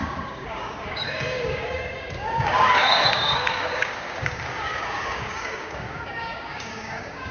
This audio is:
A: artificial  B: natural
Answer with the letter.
A